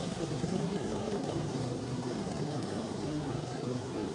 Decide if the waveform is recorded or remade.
remade